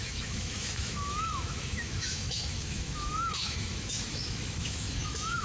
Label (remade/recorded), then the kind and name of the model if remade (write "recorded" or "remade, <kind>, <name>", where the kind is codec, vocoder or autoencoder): remade, autoencoder, DAC-VAE